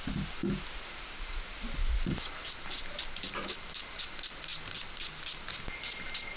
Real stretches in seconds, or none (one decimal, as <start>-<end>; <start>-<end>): 0.0-6.4